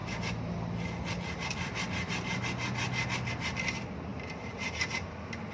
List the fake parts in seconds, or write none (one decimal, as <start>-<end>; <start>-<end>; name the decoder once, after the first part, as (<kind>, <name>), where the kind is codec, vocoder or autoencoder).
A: 4.1-5.1 (vocoder, BigVGAN v2)